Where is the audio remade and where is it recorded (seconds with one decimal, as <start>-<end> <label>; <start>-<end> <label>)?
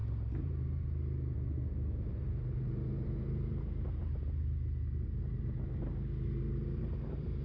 0.0-1.9 recorded; 1.9-4.0 remade; 4.0-6.8 recorded; 6.8-7.4 remade